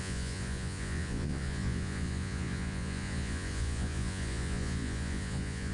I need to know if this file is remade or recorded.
remade